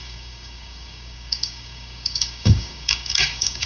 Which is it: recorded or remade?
remade